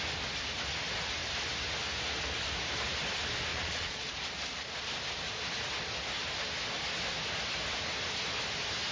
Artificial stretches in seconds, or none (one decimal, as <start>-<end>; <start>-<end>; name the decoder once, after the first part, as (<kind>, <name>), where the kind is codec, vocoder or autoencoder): 3.5-4.1 (vocoder, Vocos)